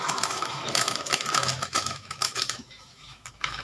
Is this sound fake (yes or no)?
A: yes